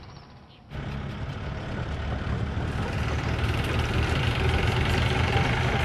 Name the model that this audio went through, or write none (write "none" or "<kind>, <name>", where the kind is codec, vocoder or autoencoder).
none